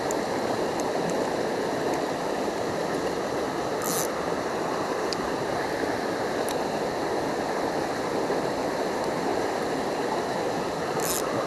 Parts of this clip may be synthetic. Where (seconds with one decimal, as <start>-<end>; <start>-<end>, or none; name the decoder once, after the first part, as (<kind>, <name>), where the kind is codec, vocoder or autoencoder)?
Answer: none